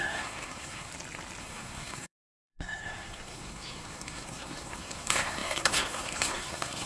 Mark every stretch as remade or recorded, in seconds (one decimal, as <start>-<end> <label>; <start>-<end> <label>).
0.0-0.9 remade; 0.9-1.4 recorded; 1.4-6.9 remade